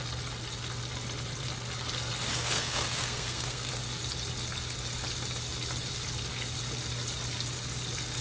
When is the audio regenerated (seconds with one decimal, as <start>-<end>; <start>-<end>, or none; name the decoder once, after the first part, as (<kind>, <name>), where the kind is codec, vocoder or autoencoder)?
2.3-3.7 (codec, SNAC)